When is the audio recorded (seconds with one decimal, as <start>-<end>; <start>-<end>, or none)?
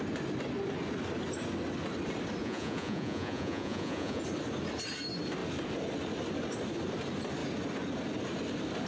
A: 0.0-2.4; 4.2-8.9